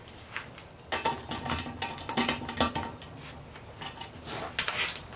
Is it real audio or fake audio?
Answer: real